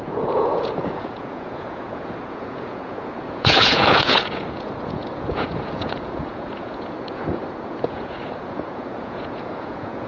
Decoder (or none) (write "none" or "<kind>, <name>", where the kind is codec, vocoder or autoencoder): vocoder, Vocos